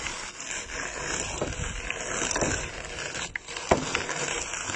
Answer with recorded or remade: recorded